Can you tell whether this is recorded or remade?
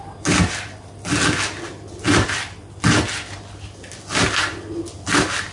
recorded